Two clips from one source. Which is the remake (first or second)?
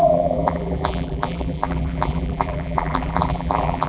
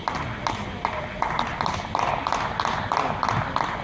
first